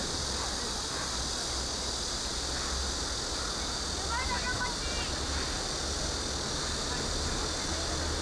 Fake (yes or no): no